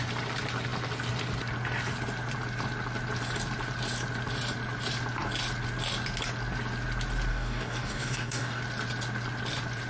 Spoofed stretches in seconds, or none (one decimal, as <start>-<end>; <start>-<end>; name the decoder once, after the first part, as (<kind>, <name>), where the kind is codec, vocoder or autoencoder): 7.3-8.6 (codec, DAC)